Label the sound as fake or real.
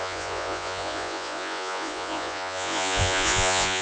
fake